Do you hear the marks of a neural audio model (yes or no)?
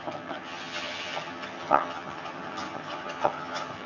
yes